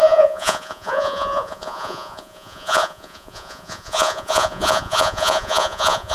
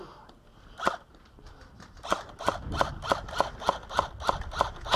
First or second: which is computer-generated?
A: first